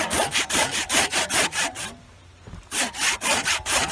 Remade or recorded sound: remade